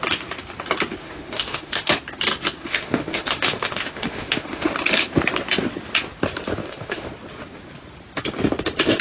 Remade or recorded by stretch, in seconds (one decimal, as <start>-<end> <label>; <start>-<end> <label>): 0.0-1.0 recorded; 1.0-1.9 remade; 1.9-2.6 recorded; 2.6-4.7 remade; 4.7-6.6 recorded; 6.6-7.1 remade; 7.1-9.0 recorded